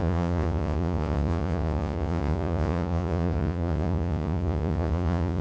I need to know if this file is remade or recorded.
remade